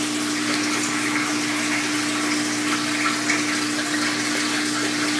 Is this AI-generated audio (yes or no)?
no